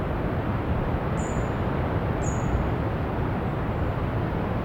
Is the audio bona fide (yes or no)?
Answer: yes